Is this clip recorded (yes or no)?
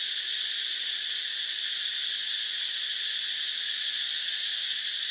yes